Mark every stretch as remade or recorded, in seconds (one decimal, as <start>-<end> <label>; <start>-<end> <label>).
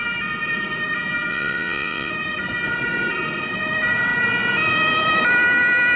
0.0-1.3 recorded; 1.3-2.1 remade; 2.1-6.0 recorded